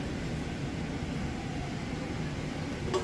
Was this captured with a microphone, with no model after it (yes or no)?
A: yes